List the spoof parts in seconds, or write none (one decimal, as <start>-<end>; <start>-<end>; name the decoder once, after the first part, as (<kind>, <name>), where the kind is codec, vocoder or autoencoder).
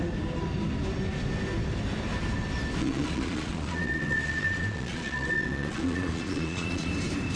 2.8-6.9 (vocoder, Vocos)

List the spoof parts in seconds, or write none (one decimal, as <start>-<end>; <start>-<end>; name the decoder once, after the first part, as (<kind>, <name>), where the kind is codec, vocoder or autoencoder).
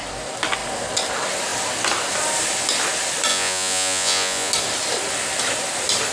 3.3-4.5 (vocoder, Vocos)